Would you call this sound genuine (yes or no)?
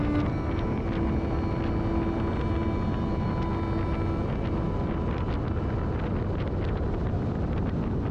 yes